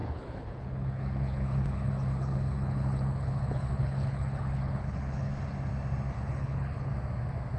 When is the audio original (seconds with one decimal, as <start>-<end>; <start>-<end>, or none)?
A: 5.3-6.1; 6.9-7.6